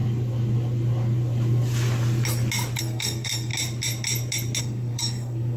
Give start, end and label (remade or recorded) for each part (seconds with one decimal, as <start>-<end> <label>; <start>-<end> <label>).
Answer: 0.0-2.8 recorded; 2.8-3.5 remade; 3.5-4.6 recorded; 4.6-5.6 remade